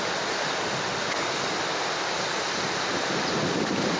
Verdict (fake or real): real